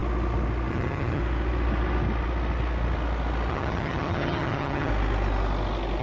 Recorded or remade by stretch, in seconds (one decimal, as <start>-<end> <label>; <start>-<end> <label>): 0.0-0.7 recorded; 0.7-1.2 remade; 1.2-3.5 recorded; 3.5-4.9 remade; 4.9-6.0 recorded